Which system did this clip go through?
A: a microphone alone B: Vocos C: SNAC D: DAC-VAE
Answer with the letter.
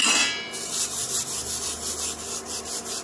A